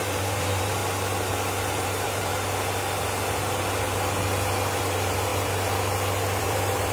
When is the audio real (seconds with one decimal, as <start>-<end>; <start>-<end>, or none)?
0.8-1.8; 2.3-4.8; 5.3-6.4